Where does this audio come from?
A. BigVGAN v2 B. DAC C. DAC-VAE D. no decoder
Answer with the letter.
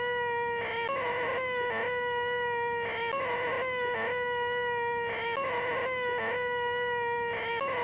D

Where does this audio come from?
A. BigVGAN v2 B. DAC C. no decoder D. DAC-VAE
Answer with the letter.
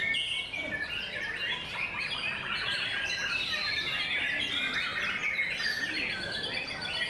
C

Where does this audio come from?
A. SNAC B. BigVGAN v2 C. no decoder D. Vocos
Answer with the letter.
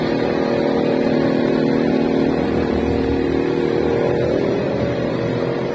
B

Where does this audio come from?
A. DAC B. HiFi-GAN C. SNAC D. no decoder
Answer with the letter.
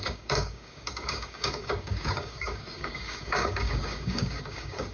A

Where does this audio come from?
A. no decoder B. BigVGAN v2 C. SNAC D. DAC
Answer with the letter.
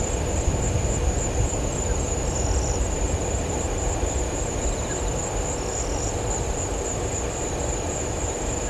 B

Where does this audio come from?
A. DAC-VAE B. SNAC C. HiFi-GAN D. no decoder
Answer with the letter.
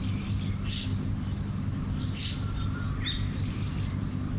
D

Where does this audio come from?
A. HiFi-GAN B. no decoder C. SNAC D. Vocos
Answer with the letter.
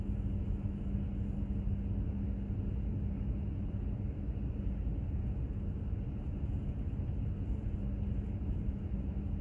B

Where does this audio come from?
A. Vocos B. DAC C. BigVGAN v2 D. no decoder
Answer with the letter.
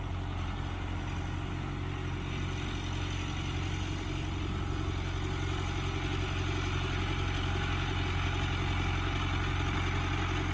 D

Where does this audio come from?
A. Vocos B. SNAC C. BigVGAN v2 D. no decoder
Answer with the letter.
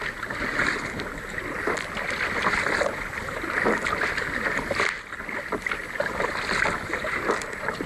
D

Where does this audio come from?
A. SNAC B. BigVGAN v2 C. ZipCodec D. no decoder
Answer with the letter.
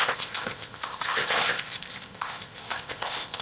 C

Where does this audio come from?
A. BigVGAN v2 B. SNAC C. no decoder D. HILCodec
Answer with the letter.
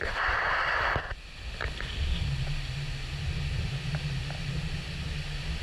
C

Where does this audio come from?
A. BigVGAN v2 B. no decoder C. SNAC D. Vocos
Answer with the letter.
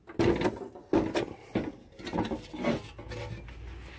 B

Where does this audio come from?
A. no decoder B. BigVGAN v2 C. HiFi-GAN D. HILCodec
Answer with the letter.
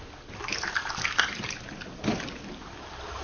A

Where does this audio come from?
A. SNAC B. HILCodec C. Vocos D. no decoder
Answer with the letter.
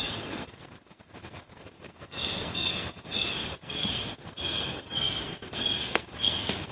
A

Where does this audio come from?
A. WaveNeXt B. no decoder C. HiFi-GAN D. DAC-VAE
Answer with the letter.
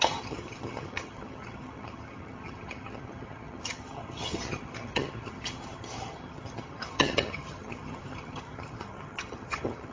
C